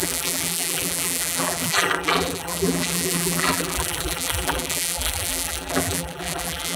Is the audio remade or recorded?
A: remade